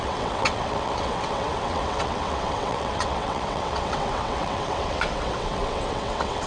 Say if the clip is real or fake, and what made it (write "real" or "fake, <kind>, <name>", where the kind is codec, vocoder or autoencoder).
fake, vocoder, WaveNeXt